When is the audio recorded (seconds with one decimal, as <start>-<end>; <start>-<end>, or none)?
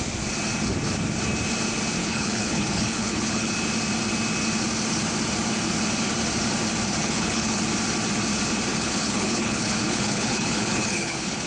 0.0-2.0; 3.5-7.0; 7.6-8.7